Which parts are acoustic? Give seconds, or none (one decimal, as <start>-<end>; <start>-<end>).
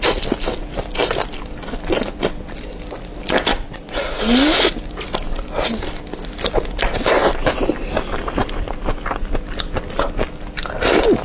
0.0-3.5; 4.2-11.2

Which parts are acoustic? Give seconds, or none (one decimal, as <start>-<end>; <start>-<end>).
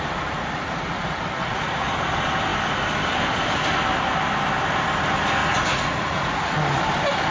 0.0-1.4; 1.9-5.4; 6.5-7.3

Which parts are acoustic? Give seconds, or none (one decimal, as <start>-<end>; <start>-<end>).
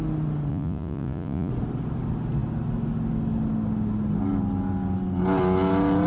0.0-0.5; 1.5-6.1